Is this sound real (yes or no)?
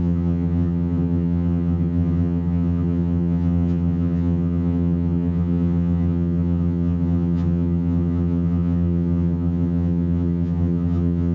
no